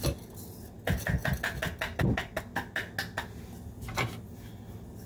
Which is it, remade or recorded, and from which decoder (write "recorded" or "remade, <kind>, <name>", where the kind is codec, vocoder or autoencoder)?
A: recorded